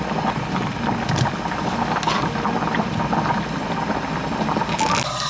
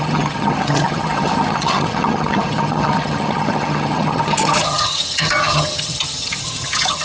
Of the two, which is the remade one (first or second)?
second